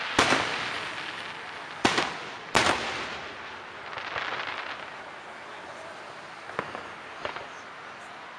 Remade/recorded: recorded